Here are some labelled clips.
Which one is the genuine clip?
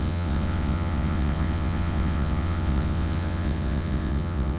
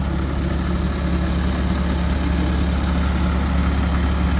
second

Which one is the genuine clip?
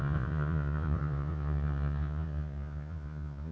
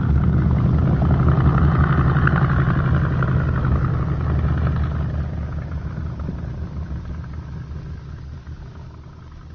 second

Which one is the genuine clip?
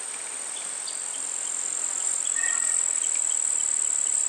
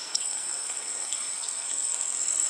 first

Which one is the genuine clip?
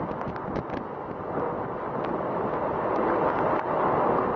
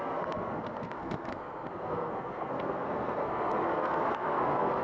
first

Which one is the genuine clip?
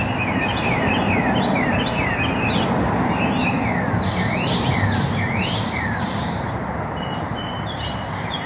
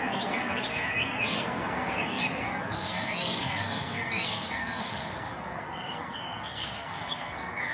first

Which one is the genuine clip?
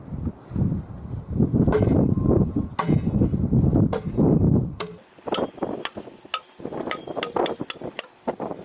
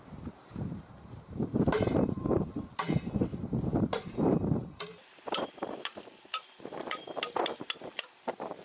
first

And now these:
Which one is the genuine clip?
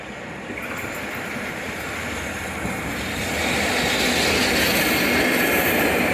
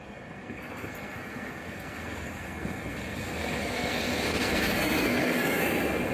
first